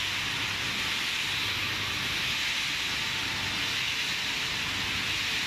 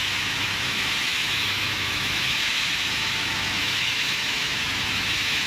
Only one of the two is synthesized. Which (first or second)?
second